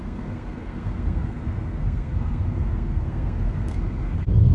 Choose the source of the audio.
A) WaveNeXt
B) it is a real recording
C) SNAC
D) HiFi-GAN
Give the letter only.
C